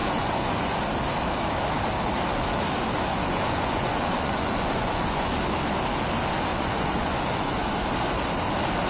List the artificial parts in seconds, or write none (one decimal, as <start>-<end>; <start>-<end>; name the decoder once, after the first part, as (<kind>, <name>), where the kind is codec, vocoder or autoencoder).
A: 0.0-0.8 (vocoder, Vocos); 3.1-5.3; 6.5-7.7